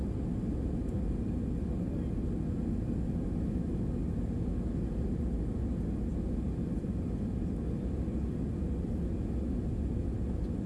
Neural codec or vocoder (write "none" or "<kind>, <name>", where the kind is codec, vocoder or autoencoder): none